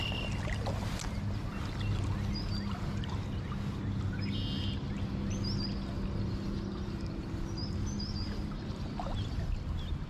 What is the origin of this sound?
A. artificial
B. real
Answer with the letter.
B